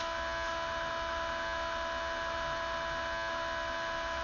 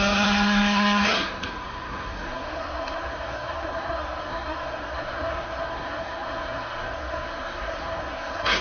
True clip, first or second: first